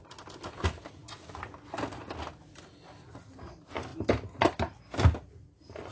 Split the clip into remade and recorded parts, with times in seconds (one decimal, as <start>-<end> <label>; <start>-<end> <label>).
0.0-5.9 recorded